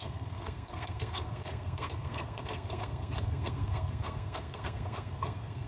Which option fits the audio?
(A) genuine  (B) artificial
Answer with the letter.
B